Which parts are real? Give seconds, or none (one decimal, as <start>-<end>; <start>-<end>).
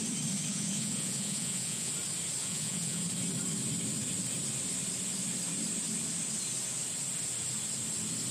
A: 0.0-0.5; 1.9-2.4; 3.0-8.3